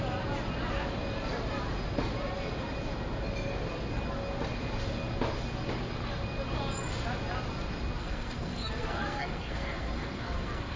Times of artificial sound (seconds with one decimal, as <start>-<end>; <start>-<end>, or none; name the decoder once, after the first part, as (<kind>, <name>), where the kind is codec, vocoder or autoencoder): 8.0-10.8 (codec, SNAC)